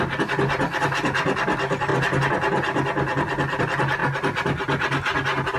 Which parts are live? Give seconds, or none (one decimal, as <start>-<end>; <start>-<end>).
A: 0.0-5.6